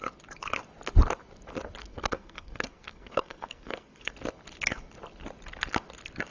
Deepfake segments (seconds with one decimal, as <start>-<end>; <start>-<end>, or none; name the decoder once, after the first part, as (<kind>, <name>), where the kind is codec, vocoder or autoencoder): 1.9-4.1 (codec, SNAC)